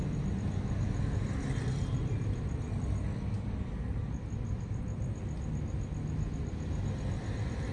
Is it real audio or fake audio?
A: real